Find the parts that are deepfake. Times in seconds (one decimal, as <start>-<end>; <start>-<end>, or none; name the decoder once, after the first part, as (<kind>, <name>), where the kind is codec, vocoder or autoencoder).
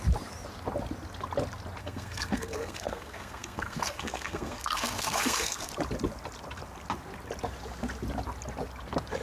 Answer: 1.8-5.7 (codec, SNAC)